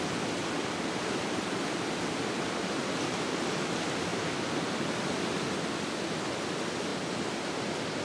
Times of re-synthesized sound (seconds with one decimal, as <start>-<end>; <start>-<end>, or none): 0.4-3.4